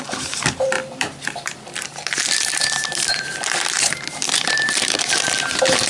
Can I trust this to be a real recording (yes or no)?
no